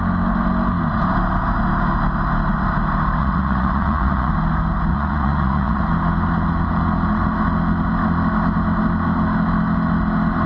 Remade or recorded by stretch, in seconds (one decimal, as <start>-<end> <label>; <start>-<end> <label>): 0.0-3.2 recorded; 3.2-4.3 remade; 4.3-4.9 recorded; 4.9-5.8 remade; 5.8-10.5 recorded